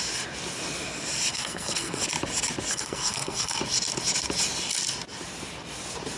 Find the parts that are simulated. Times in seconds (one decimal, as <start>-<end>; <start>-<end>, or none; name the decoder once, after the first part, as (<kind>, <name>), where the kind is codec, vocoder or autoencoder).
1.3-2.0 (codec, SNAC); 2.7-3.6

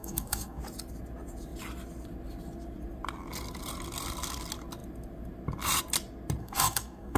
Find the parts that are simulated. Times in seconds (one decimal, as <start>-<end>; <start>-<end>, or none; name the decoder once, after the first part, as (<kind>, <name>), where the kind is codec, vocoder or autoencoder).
0.0-0.6 (codec, DAC); 6.4-7.2

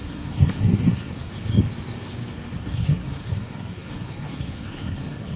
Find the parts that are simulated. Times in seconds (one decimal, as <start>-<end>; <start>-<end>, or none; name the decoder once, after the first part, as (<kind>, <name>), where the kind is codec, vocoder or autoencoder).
0.0-1.3 (codec, SNAC); 2.6-5.4